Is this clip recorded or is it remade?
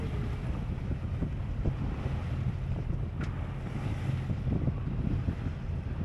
recorded